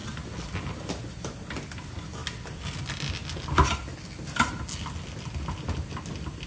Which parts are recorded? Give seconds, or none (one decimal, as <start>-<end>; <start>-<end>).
0.0-6.5